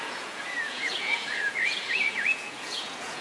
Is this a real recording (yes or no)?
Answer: no